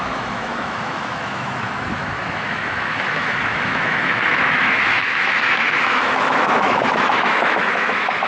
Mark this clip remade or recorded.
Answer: remade